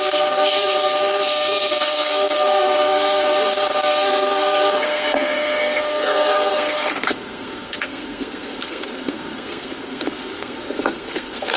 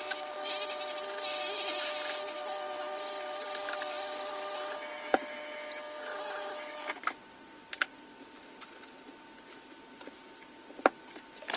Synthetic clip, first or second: first